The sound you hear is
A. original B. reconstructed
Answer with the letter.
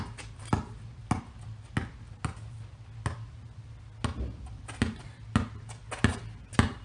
A